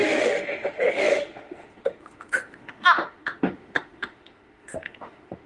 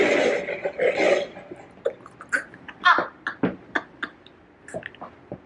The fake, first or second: first